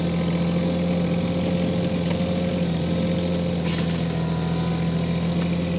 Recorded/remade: recorded